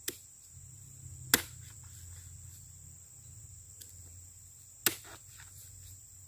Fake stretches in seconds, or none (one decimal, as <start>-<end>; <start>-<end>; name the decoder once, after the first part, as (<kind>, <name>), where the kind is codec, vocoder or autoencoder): none